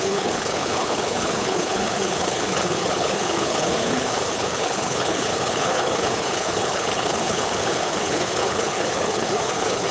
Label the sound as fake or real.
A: fake